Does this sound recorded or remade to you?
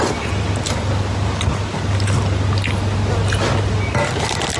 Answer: recorded